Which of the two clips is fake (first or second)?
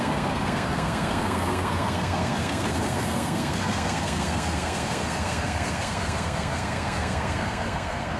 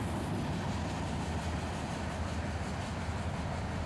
first